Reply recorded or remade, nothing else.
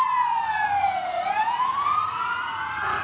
remade